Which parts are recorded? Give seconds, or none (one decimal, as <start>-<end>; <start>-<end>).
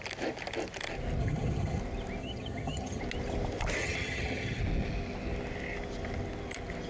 0.0-1.2; 1.8-2.2; 3.0-3.8; 4.6-6.9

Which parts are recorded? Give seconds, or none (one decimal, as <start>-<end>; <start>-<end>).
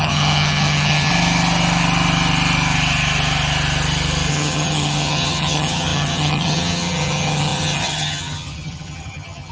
1.1-4.3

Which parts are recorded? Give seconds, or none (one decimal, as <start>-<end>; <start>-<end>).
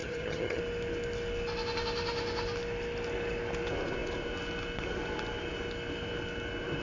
0.6-6.8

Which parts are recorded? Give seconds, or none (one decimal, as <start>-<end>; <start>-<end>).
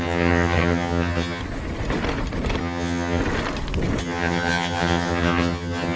1.4-2.6; 3.2-4.0